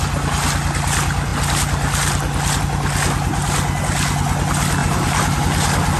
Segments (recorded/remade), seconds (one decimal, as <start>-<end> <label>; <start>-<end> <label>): 0.0-4.8 recorded; 4.8-5.4 remade; 5.4-6.0 recorded